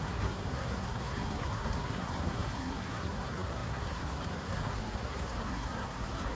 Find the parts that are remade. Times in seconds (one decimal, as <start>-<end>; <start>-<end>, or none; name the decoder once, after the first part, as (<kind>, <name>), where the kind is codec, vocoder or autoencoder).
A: 0.0-6.3 (codec, SNAC)